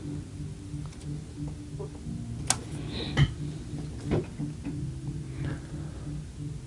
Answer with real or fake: real